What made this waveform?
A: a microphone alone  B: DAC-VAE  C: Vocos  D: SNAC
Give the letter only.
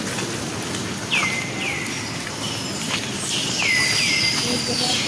A